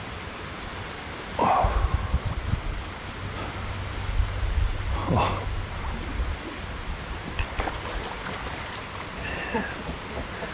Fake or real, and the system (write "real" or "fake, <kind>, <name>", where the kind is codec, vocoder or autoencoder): real